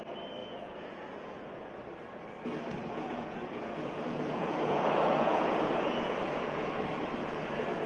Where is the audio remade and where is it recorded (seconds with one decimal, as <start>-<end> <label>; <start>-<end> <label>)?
0.0-0.4 recorded; 0.4-1.7 remade; 1.7-2.8 recorded; 2.8-6.7 remade; 6.7-7.2 recorded; 7.2-7.9 remade